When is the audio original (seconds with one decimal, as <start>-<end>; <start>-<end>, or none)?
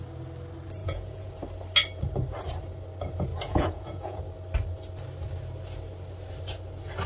0.0-0.8; 1.3-3.3; 4.2-7.1